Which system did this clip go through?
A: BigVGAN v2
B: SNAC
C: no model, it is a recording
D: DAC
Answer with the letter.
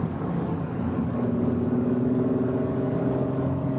D